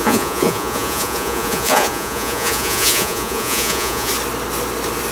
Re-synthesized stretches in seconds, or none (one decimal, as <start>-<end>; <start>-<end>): 0.0-4.1